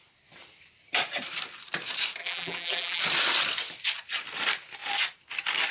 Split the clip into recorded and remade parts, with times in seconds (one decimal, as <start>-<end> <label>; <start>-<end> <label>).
0.0-2.2 recorded; 2.2-3.0 remade; 3.0-5.7 recorded